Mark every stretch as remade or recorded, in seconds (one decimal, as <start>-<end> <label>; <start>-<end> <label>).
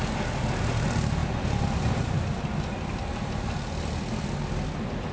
0.0-5.1 recorded